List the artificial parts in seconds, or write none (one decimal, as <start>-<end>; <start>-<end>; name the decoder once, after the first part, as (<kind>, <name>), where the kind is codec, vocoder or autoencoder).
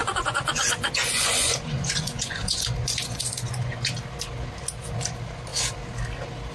0.0-3.9 (vocoder, Vocos)